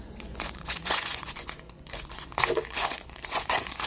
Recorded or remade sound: remade